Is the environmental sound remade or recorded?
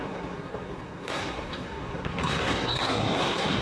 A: remade